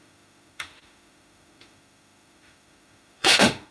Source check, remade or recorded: remade